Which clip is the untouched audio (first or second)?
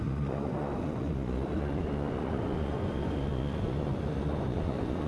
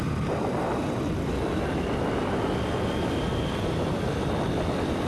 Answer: second